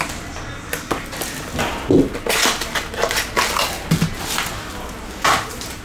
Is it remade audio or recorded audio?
recorded